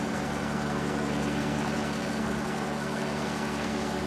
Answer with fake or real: fake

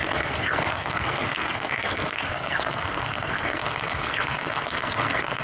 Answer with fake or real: fake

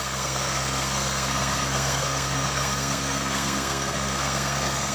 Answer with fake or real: fake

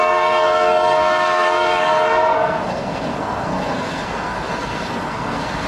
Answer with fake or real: fake